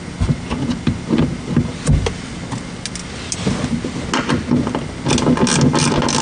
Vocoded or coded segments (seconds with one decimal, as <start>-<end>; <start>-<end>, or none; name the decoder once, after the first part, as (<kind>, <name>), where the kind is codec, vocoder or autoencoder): none